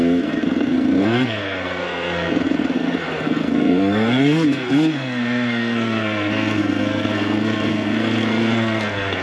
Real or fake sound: fake